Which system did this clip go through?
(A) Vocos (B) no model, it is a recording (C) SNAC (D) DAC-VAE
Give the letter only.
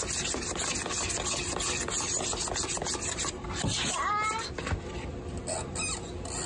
B